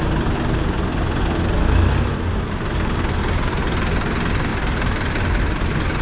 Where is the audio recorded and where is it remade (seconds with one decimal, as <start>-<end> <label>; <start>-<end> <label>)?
0.0-4.5 recorded; 4.5-5.4 remade; 5.4-6.0 recorded